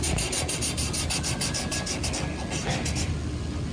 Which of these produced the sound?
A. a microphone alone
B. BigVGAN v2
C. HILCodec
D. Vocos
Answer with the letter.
A